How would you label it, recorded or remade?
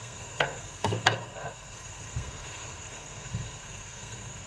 remade